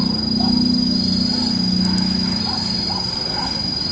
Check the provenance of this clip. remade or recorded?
recorded